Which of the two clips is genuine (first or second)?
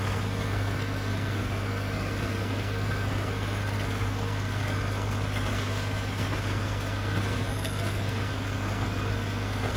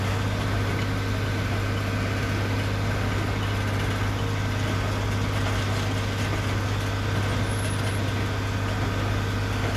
second